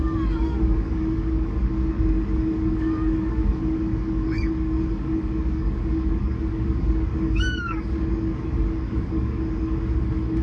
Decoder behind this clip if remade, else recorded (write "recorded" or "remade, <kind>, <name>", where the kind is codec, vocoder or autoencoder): remade, codec, DAC